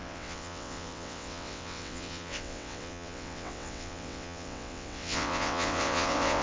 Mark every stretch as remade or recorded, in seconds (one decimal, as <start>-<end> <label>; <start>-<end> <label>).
0.0-6.4 remade